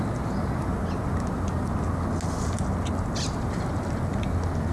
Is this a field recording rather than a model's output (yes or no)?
yes